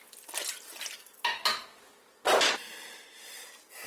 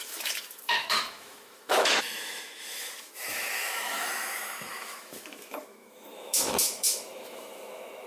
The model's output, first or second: second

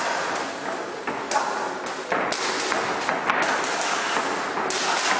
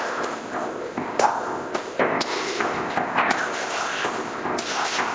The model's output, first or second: second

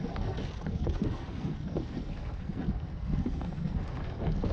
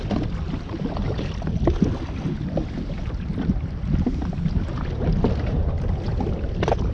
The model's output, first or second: first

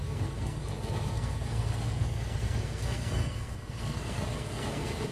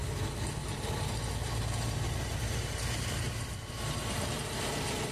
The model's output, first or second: first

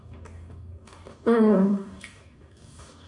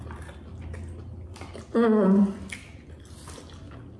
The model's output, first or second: first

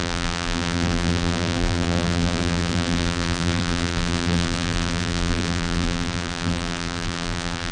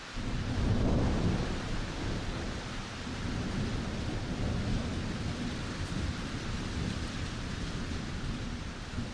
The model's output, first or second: first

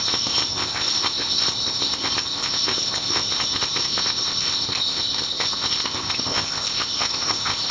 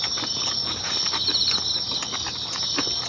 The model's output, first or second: first